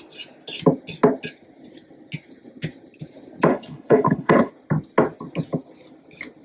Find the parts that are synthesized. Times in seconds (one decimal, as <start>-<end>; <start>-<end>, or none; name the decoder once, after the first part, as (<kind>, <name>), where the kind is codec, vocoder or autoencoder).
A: 3.5-4.5 (codec, HILCodec)